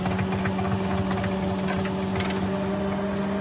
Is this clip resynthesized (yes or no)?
no